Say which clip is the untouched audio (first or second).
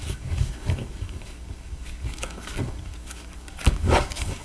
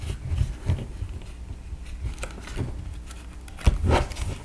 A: second